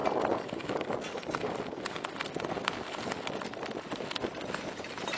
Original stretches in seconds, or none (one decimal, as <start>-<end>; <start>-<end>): 0.0-5.2